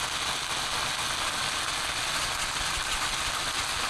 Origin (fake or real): real